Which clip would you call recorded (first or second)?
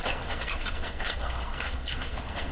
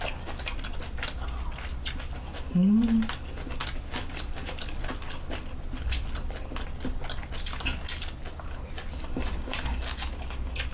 second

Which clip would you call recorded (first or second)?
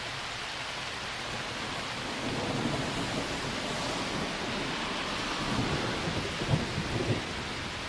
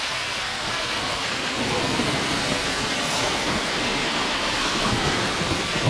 first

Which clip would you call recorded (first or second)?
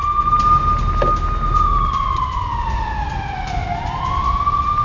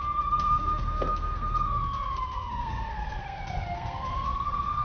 first